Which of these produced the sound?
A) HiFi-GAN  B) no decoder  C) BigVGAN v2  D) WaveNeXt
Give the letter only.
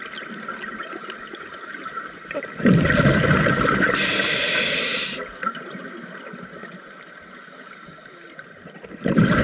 B